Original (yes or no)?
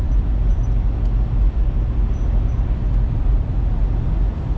no